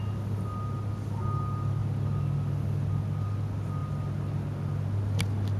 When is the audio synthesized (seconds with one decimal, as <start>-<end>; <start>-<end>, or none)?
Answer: none